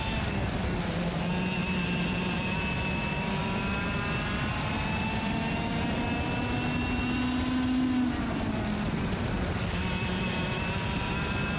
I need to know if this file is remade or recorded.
recorded